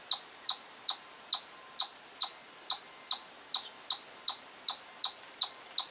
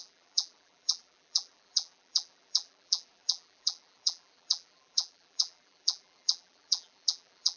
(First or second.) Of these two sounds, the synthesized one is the second